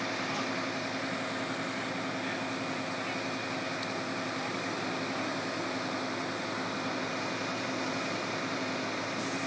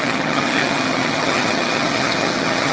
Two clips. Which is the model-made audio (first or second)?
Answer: second